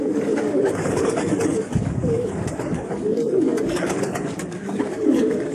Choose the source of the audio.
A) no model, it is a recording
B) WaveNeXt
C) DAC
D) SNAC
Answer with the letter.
C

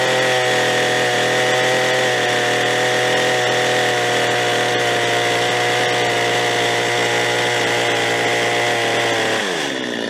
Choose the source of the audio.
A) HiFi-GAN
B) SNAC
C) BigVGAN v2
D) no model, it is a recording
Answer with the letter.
D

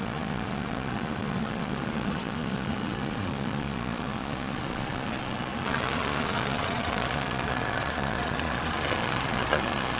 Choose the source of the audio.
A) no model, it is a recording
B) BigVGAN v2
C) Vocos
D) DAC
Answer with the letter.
C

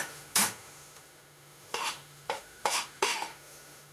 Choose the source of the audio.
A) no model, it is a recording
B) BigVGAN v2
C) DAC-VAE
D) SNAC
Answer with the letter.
C